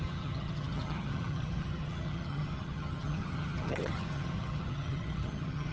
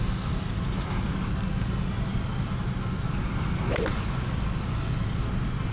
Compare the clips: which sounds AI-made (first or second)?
first